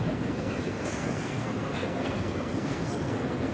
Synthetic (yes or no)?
yes